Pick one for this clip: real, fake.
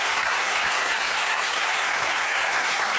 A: fake